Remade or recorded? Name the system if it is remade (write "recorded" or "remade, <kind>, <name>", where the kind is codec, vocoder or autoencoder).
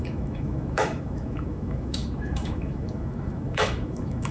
remade, autoencoder, DAC-VAE